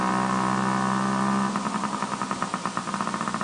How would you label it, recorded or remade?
recorded